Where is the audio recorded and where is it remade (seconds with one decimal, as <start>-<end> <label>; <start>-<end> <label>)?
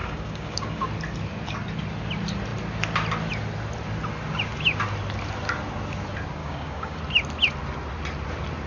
0.0-0.9 remade; 0.9-6.4 recorded; 6.4-7.0 remade; 7.0-8.7 recorded